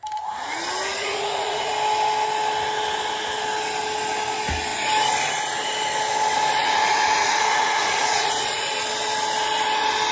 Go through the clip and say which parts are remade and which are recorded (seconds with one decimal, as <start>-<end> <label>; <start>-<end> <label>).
0.0-0.9 recorded; 0.9-1.7 remade; 1.7-6.6 recorded; 6.6-8.7 remade; 8.7-10.1 recorded